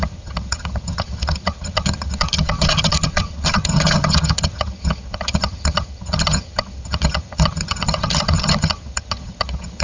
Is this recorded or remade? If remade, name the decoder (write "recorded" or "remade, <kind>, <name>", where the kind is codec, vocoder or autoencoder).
remade, vocoder, HiFi-GAN